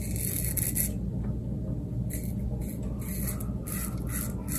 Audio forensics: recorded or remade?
recorded